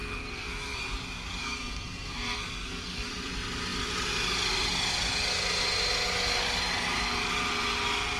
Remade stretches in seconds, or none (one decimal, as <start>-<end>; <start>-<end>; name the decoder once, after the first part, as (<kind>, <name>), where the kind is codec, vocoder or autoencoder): 0.0-0.8 (codec, SNAC); 1.4-3.1